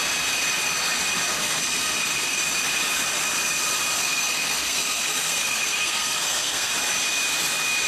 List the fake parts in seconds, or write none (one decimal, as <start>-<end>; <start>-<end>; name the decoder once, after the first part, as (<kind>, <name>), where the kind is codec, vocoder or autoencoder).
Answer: 1.3-2.4 (codec, SNAC); 4.0-6.7